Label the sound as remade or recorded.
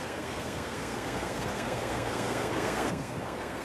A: remade